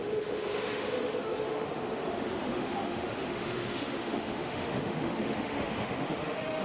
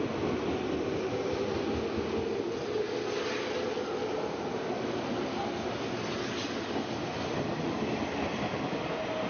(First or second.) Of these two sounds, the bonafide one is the second